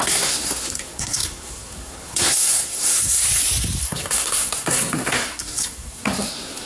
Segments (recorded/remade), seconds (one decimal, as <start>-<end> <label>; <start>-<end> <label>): 0.0-3.2 remade; 3.2-3.8 recorded; 3.8-6.7 remade